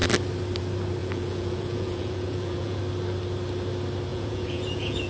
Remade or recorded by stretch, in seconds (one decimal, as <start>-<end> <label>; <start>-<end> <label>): 0.0-1.0 recorded; 1.0-2.8 remade; 2.8-4.1 recorded; 4.1-5.1 remade

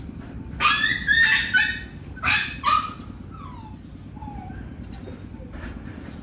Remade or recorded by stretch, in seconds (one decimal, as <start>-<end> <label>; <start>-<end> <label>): 0.0-6.2 recorded

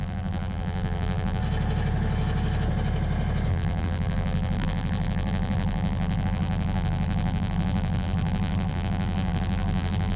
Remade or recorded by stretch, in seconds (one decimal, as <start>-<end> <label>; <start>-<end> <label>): 0.0-1.4 remade; 1.4-3.5 recorded; 3.5-10.2 remade

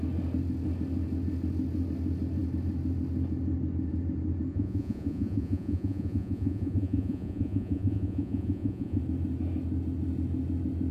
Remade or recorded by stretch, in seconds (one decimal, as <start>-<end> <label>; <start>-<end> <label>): 0.0-4.5 recorded; 4.5-9.0 remade; 9.0-10.9 recorded

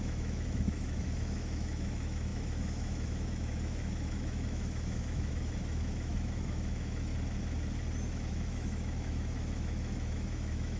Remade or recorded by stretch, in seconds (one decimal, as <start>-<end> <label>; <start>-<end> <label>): 0.0-7.1 remade; 7.1-8.1 recorded; 8.1-10.8 remade

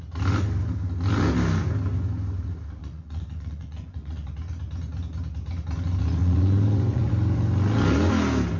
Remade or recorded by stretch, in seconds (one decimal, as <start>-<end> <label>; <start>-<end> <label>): 0.0-2.8 recorded; 2.8-4.3 remade; 4.3-6.2 recorded; 6.2-7.1 remade; 7.1-8.6 recorded

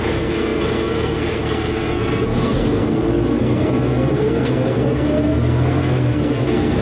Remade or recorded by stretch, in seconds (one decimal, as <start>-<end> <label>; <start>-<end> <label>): 0.0-6.8 remade

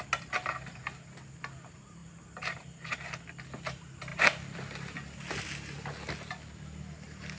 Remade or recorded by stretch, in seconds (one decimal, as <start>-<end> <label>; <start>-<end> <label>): 0.0-2.0 recorded; 2.0-2.9 remade; 2.9-7.4 recorded